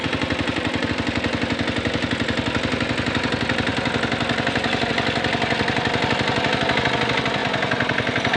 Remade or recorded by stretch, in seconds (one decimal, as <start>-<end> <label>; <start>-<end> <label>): 0.0-0.9 remade; 0.9-8.4 recorded